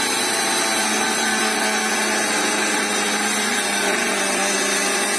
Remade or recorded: recorded